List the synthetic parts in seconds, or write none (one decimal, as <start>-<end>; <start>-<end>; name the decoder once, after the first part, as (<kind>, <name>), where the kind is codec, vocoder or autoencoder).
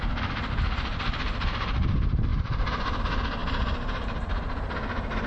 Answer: 2.3-3.0 (vocoder, BigVGAN v2); 3.4-4.7